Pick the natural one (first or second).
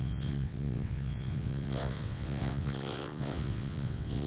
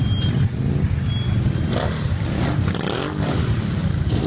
second